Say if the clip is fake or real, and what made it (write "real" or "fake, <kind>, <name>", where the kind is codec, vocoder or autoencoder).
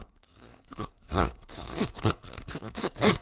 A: fake, codec, SNAC